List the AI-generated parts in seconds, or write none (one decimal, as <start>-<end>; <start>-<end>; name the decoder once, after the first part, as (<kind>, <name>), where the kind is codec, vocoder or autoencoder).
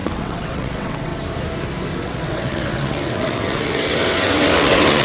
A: 0.0-1.1 (vocoder, WaveNeXt); 2.0-5.0